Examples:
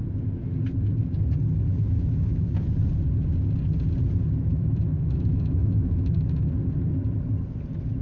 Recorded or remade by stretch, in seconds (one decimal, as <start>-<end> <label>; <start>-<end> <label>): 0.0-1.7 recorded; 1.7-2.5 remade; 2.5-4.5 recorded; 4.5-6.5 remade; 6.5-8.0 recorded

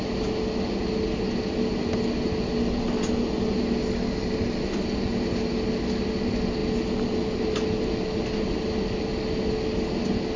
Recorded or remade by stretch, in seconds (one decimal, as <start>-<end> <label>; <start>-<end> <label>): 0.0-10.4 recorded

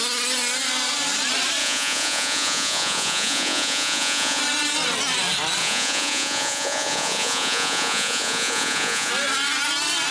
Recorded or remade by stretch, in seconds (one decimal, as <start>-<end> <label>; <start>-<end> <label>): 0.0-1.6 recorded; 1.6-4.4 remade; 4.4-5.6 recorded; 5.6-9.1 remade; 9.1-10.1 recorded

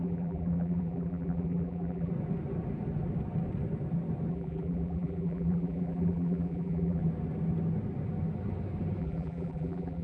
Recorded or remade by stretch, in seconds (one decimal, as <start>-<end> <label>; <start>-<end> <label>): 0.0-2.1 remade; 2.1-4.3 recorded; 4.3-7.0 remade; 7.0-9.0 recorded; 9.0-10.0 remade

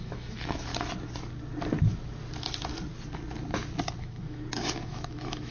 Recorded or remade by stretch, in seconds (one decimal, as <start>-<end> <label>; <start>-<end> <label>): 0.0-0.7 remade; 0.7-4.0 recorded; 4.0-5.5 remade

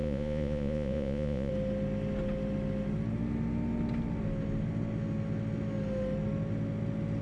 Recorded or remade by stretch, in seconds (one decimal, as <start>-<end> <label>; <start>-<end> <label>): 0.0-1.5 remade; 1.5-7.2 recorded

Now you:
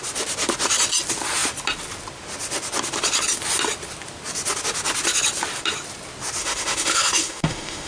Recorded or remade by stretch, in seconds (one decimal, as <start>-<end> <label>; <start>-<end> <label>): 0.0-6.4 recorded; 6.4-7.9 remade